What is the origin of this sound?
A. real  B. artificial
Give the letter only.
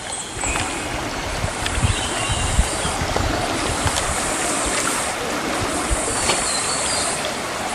A